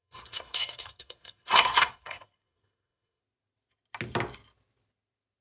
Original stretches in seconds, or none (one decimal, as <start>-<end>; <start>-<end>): 3.2-5.4